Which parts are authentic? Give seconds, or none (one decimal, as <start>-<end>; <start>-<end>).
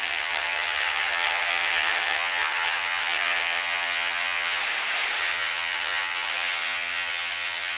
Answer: 4.6-5.2